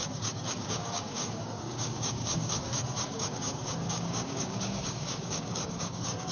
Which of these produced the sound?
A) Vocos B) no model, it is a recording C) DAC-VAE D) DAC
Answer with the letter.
D